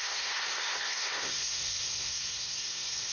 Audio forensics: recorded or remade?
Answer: remade